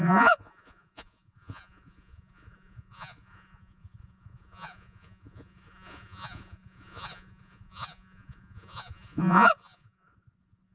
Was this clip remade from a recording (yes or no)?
yes